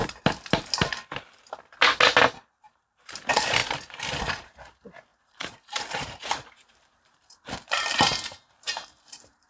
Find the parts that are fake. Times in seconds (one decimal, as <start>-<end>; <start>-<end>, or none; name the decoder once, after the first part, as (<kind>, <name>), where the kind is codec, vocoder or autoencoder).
2.6-9.5 (vocoder, BigVGAN v2)